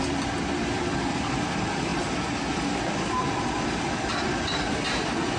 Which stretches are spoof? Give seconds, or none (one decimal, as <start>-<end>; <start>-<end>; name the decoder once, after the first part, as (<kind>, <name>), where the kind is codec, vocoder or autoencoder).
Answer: 0.0-1.9 (vocoder, BigVGAN v2); 2.6-5.4

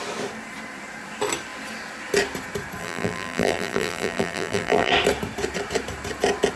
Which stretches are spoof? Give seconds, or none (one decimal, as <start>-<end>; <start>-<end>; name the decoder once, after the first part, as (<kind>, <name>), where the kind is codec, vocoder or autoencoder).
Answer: 2.8-4.9 (vocoder, BigVGAN v2)